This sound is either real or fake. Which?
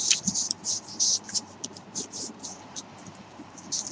fake